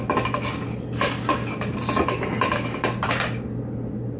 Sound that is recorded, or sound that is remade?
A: recorded